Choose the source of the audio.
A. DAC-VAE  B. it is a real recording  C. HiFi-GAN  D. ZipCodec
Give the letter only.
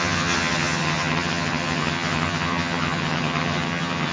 C